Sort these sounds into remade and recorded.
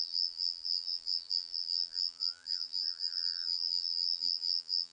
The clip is remade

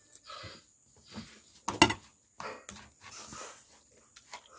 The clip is recorded